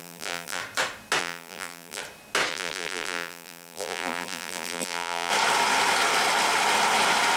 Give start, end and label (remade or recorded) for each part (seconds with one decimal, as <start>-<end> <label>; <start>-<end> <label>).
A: 0.0-0.6 remade; 0.6-1.2 recorded; 1.2-2.0 remade; 2.0-2.5 recorded; 2.5-5.3 remade; 5.3-7.4 recorded